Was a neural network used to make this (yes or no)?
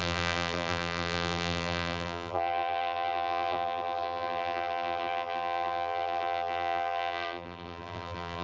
yes